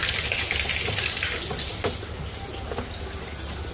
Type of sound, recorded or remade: recorded